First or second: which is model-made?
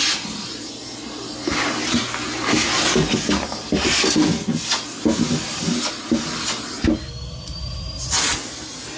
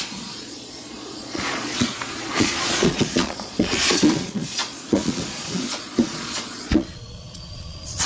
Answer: second